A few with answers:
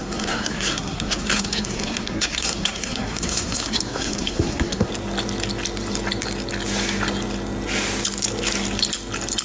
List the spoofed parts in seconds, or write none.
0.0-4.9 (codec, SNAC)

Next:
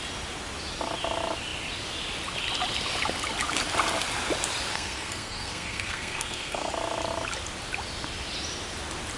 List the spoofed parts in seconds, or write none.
4.7-6.7 (codec, SNAC)